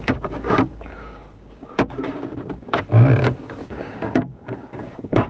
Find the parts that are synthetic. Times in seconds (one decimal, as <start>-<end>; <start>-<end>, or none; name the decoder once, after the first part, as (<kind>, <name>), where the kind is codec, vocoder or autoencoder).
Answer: 0.0-5.3 (codec, DAC)